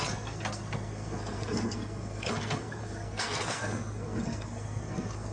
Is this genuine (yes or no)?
no